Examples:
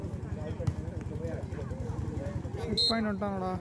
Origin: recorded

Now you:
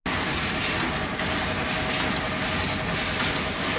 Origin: recorded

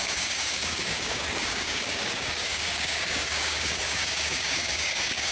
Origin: remade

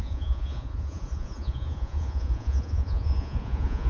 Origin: remade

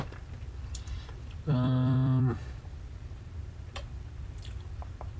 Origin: remade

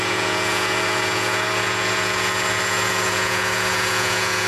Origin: remade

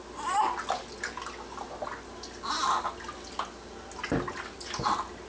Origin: recorded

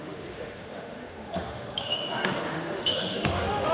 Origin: remade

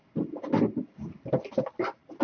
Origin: recorded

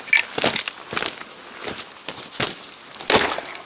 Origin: recorded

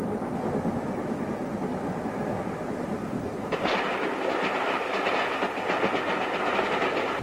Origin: recorded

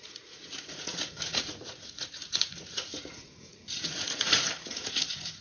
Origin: remade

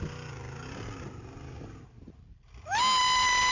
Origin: recorded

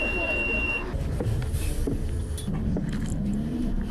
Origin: remade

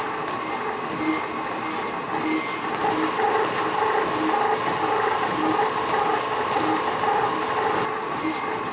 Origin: recorded